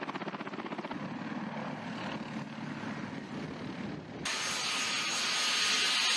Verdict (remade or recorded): recorded